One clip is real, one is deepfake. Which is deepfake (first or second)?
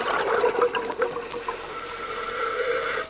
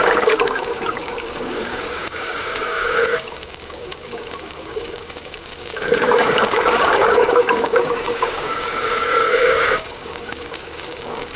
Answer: second